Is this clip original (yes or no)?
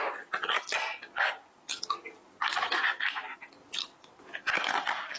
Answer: yes